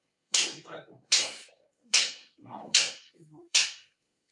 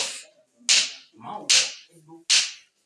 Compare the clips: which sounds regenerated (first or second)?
first